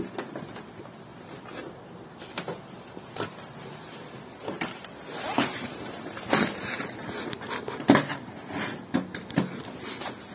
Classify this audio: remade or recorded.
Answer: remade